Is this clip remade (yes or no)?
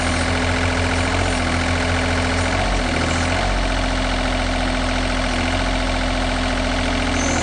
no